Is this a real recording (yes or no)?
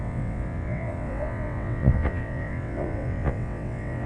no